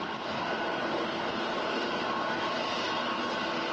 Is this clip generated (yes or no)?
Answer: no